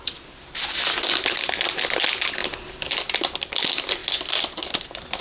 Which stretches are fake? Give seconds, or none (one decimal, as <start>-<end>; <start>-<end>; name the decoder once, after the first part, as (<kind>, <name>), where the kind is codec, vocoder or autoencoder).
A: none